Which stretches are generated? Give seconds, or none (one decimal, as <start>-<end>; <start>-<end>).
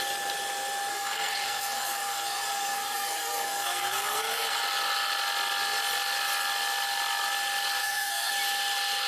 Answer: 0.9-4.6; 7.8-8.3